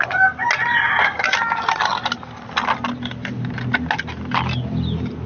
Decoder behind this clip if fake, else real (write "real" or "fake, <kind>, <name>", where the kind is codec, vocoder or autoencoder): real